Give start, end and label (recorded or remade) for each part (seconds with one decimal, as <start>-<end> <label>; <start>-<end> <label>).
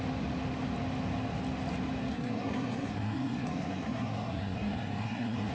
0.0-2.1 recorded; 2.1-5.5 remade